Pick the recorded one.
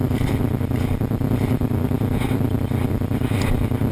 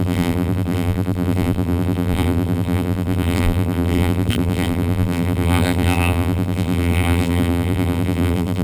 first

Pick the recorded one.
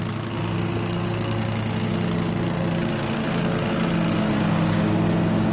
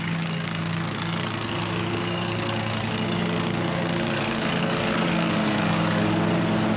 first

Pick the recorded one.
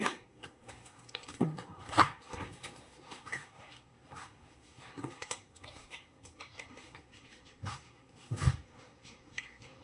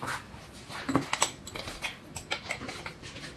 second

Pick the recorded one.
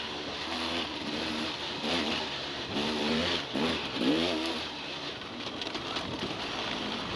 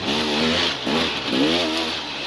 second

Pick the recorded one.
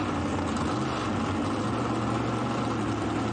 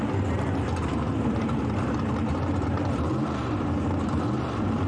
first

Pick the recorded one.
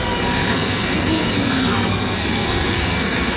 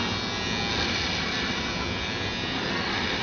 second